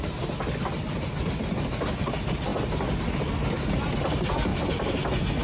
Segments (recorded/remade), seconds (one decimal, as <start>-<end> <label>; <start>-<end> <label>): 0.0-5.4 recorded